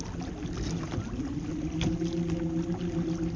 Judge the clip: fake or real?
real